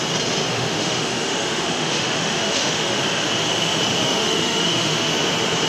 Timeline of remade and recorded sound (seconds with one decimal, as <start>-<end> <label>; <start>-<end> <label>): 0.0-0.5 recorded; 0.5-3.0 remade; 3.0-4.0 recorded; 4.0-5.1 remade; 5.1-5.7 recorded

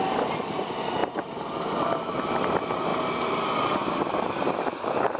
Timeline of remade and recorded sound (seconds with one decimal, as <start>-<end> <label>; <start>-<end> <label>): 0.0-1.0 recorded; 1.0-2.2 remade; 2.2-5.2 recorded

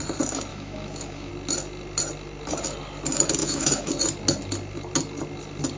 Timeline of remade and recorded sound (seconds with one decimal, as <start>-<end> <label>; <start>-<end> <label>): 0.0-0.5 recorded; 0.5-1.3 remade; 1.3-3.4 recorded; 3.4-3.9 remade; 3.9-5.8 recorded

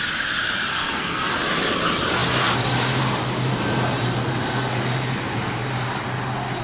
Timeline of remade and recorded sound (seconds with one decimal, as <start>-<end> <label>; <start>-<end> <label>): 0.0-0.7 recorded; 0.7-1.3 remade; 1.3-6.6 recorded

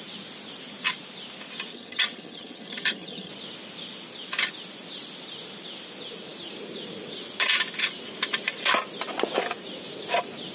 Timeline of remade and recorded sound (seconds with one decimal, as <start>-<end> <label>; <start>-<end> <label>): 0.0-1.7 recorded; 1.7-3.3 remade; 3.3-10.5 recorded

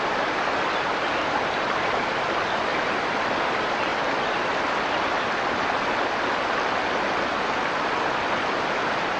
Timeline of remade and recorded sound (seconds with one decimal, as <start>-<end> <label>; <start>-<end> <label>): 0.0-9.2 recorded

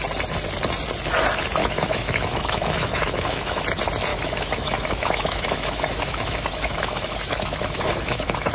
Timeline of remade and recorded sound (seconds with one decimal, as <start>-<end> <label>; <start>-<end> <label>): 0.0-1.6 recorded; 1.6-3.6 remade; 3.6-4.1 recorded; 4.1-8.5 remade

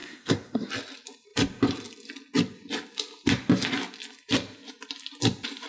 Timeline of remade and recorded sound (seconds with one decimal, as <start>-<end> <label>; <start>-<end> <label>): 0.0-0.7 remade; 0.7-5.7 recorded